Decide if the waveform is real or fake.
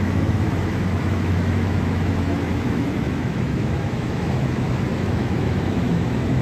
fake